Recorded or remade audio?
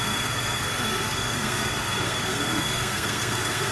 remade